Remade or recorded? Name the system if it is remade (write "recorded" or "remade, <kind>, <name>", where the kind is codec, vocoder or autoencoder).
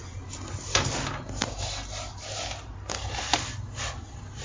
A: recorded